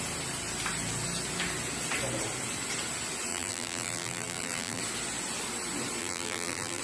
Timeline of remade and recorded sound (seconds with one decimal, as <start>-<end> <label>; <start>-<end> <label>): 0.0-3.3 recorded; 3.3-4.8 remade; 4.8-6.0 recorded; 6.0-6.8 remade